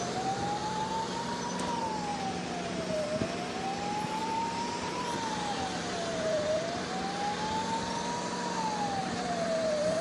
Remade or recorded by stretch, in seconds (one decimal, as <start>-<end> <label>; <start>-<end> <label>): 0.0-0.6 recorded; 0.6-1.2 remade; 1.2-2.1 recorded; 2.1-3.1 remade; 3.1-4.2 recorded; 4.2-6.8 remade; 6.8-9.0 recorded; 9.0-10.0 remade